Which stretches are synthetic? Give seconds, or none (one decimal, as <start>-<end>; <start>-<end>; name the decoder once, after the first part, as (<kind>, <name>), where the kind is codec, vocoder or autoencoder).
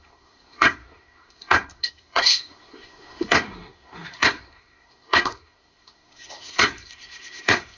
0.0-7.8 (codec, SNAC)